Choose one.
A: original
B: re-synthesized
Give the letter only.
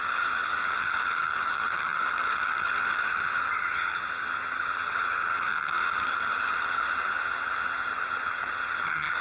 B